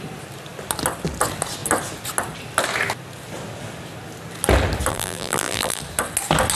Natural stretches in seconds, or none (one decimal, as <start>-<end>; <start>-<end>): 0.0-4.9; 5.8-6.5